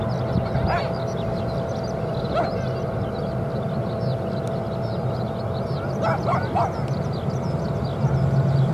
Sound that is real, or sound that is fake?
real